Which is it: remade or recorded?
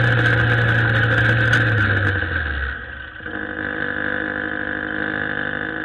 recorded